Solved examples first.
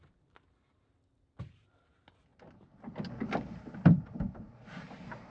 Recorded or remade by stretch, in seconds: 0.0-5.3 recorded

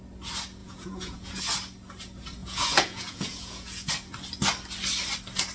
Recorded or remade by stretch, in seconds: 0.0-0.6 recorded; 0.6-1.4 remade; 1.4-2.4 recorded; 2.4-3.9 remade; 3.9-5.5 recorded

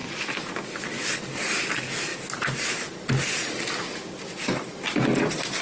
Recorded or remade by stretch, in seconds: 0.0-5.6 recorded